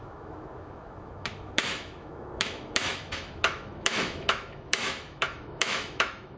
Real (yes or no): no